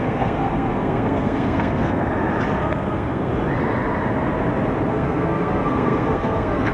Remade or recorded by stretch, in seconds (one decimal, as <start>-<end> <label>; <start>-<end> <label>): 0.0-2.1 remade; 2.1-2.6 recorded; 2.6-3.3 remade; 3.3-4.9 recorded; 4.9-6.7 remade